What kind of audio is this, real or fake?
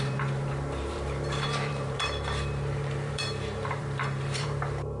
fake